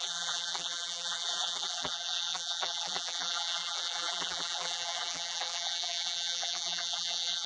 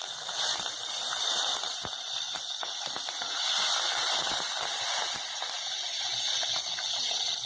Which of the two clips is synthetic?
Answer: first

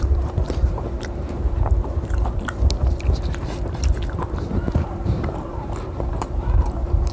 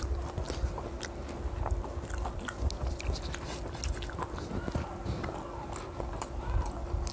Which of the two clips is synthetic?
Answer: first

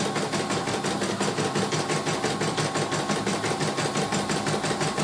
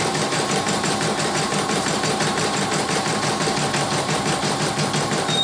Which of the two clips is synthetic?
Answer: second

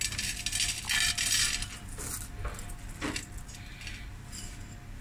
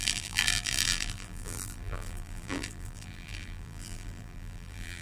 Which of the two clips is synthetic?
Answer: second